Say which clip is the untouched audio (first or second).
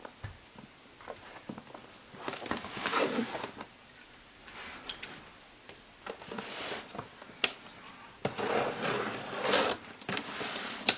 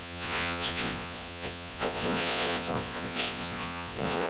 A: first